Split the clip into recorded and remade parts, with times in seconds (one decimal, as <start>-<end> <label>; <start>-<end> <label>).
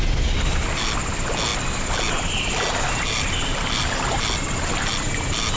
0.0-5.6 recorded